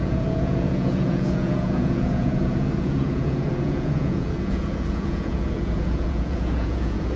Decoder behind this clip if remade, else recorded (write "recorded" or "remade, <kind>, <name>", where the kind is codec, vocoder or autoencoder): remade, vocoder, Vocos